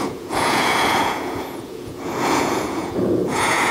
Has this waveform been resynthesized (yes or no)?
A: yes